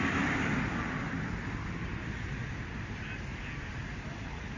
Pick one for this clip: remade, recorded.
recorded